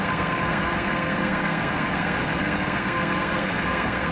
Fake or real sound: fake